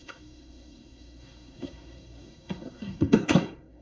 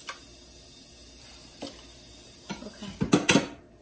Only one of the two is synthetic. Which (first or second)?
first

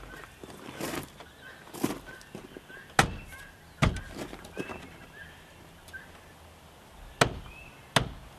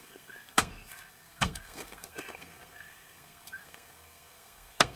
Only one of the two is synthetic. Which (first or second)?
second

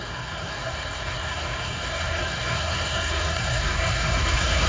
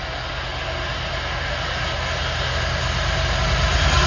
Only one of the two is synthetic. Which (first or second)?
first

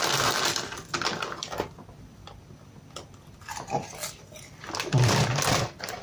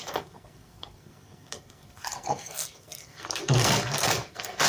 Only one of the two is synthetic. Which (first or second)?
second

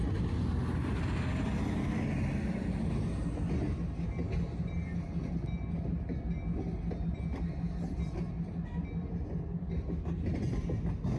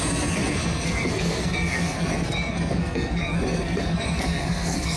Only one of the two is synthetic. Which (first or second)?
second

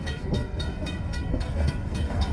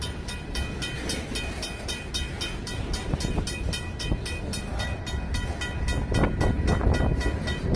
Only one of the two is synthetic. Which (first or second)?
first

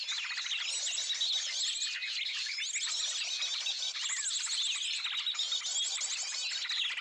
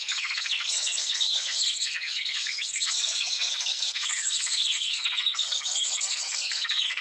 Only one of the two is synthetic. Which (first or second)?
second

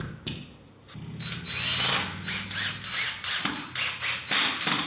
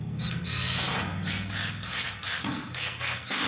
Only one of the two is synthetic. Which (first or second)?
second